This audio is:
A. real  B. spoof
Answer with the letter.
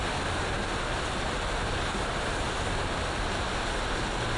A